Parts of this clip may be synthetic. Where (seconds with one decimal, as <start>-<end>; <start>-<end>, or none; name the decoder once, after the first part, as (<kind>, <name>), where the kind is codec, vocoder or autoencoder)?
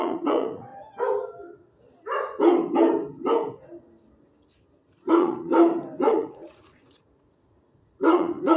0.0-0.7 (vocoder, Vocos); 5.1-5.5; 6.0-8.6